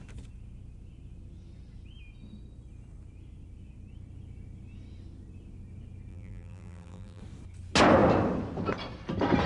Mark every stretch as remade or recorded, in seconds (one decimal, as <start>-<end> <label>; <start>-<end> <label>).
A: 0.0-6.1 recorded; 6.1-7.2 remade; 7.2-9.5 recorded